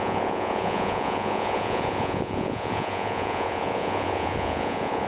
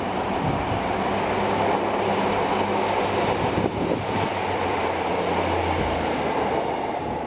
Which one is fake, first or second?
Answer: first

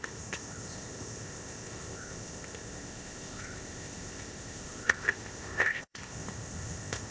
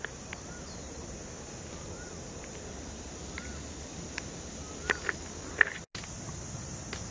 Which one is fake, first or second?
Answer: first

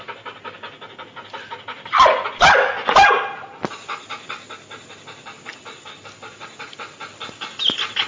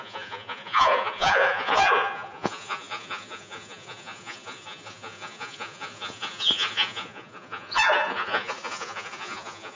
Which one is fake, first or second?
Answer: second